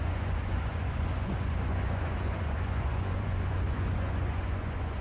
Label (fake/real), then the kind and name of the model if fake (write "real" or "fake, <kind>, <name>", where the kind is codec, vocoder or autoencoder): fake, vocoder, Vocos